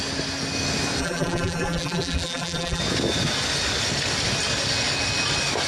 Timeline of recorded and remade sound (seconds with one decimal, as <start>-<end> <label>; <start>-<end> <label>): 0.0-1.0 recorded; 1.0-2.8 remade; 2.8-5.7 recorded